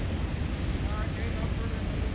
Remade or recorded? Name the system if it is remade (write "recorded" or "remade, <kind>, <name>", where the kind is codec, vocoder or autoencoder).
recorded